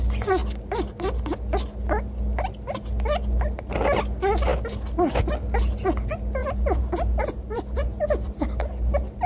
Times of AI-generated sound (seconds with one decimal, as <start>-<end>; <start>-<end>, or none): 6.4-9.3